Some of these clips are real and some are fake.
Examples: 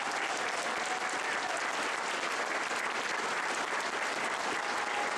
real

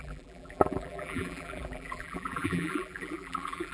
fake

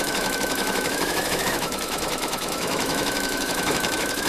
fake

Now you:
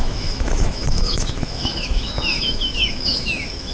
fake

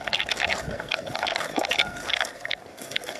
fake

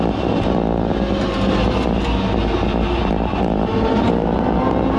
real